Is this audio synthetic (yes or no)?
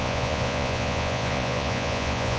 yes